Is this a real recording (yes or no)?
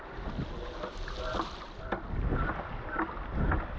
yes